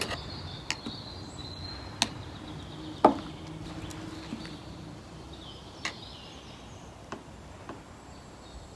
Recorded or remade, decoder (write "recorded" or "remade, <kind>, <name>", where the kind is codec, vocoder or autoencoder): recorded